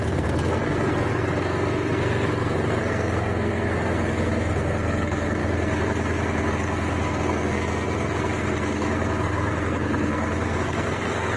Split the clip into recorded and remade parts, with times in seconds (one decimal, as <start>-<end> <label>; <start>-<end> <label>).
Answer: 0.0-11.4 remade